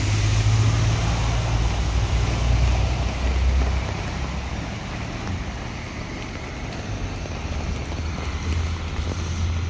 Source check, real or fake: real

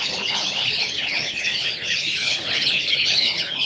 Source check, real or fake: fake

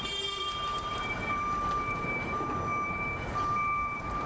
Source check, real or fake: fake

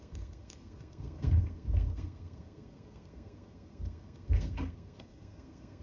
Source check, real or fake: fake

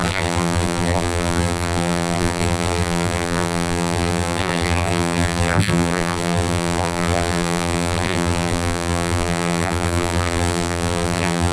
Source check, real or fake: fake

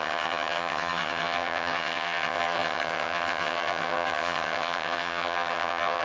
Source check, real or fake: fake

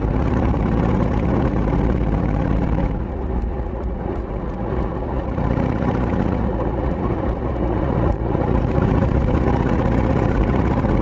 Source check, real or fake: fake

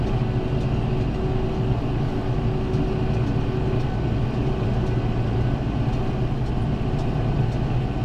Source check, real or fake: real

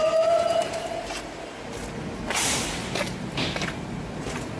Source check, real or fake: real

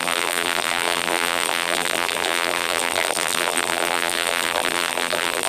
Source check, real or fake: fake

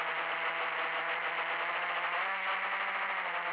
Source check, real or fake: real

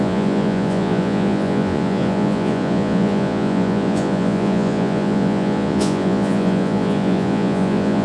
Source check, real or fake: fake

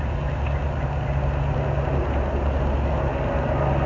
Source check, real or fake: real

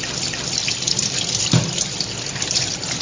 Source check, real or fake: real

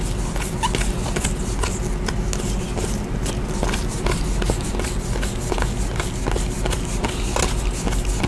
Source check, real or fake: real